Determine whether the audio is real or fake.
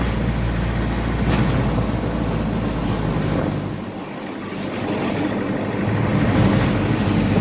real